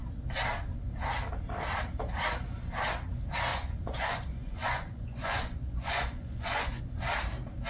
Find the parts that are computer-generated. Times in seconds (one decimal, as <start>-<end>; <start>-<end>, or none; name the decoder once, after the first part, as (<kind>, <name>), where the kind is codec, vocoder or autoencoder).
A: 3.5-6.8 (vocoder, Vocos)

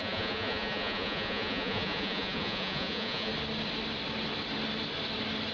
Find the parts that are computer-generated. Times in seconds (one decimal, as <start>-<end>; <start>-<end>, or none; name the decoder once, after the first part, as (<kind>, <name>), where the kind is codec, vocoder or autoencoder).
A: 0.0-3.3 (vocoder, Vocos)

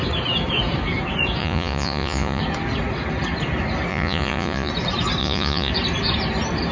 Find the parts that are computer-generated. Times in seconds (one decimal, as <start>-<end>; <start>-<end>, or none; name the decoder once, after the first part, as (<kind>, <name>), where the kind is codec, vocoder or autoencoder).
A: 1.4-2.4 (vocoder, Vocos); 3.9-4.7; 5.2-5.7

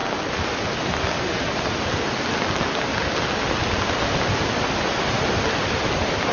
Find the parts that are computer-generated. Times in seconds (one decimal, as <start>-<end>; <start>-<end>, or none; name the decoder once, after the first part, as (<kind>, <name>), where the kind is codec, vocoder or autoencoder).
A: none